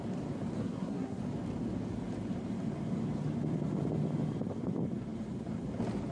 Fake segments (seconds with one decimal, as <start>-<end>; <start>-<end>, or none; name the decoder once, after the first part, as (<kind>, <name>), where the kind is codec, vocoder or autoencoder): 0.6-1.2 (codec, SNAC)